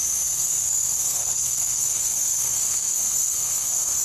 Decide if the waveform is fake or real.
fake